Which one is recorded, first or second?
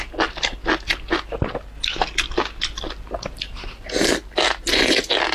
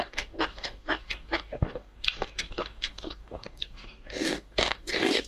first